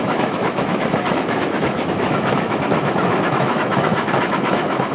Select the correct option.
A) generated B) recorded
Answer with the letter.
A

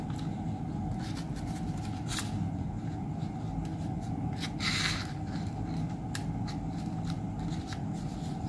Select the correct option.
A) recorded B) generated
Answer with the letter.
A